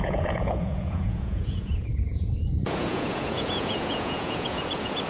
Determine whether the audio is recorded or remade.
remade